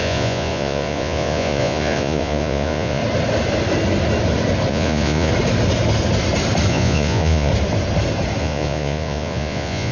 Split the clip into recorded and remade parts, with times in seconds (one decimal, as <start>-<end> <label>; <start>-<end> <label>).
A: 0.0-3.0 remade; 3.0-4.7 recorded; 4.7-5.3 remade; 5.3-6.7 recorded; 6.7-7.5 remade; 7.5-8.4 recorded; 8.4-9.9 remade